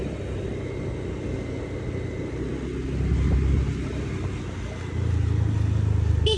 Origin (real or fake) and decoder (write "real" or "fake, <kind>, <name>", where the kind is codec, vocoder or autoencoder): real